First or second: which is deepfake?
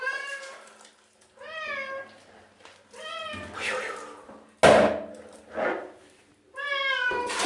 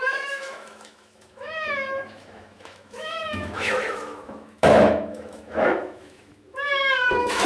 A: second